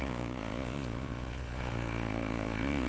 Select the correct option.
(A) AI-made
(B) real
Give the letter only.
A